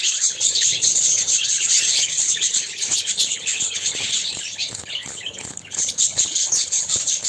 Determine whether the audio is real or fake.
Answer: fake